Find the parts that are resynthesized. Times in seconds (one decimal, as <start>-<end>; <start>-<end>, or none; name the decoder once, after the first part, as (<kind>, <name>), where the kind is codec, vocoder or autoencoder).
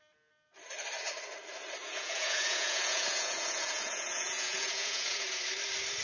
1.8-5.4 (vocoder, Vocos)